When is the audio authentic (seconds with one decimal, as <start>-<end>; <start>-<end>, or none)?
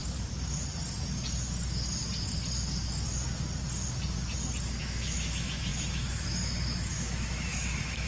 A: 0.0-4.8